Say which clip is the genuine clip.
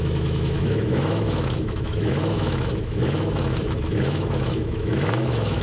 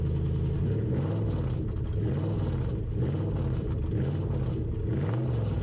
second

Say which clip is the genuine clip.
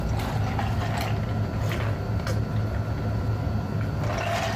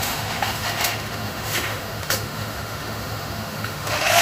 first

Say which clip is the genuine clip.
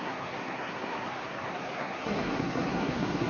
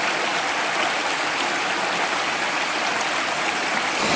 second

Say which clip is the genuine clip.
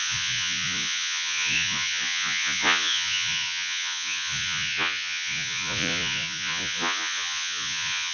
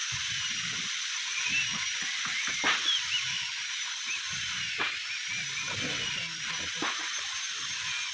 second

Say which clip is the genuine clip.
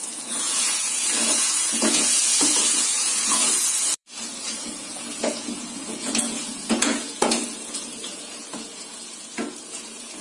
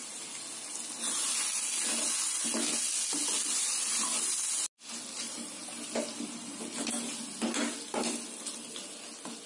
second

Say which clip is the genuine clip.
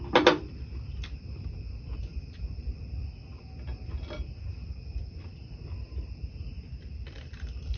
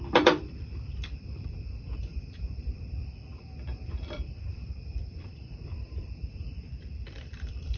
first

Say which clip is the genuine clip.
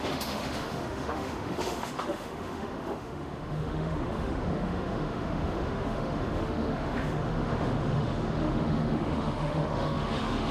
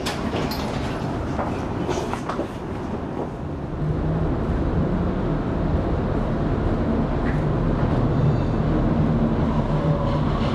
second